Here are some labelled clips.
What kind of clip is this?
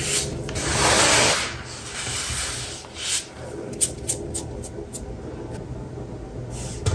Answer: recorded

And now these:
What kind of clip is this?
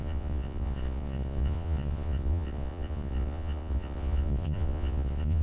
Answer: remade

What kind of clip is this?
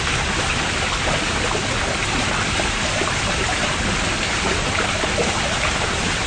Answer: recorded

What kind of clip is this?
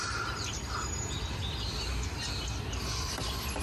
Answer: recorded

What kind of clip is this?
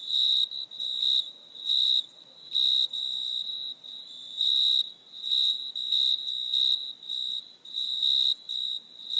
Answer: recorded